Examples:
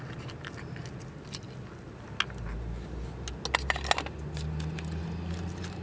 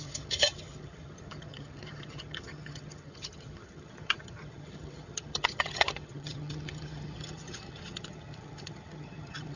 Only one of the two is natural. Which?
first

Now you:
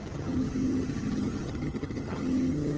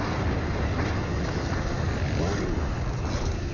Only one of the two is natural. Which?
second